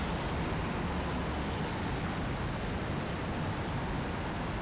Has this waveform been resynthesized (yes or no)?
no